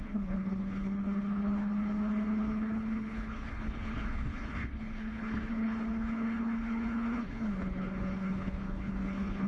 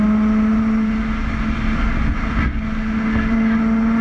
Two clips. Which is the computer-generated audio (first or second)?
first